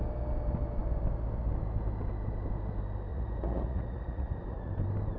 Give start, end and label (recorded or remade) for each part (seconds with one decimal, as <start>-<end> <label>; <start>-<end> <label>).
0.0-3.1 recorded; 3.1-4.7 remade; 4.7-5.2 recorded